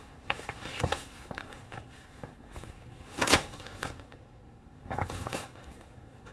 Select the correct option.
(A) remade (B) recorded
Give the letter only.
A